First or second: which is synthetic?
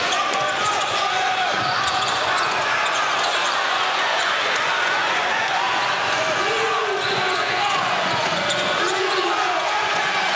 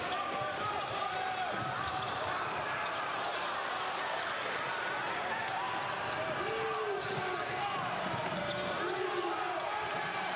first